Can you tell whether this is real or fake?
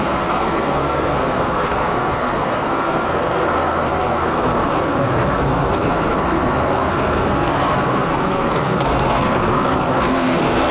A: fake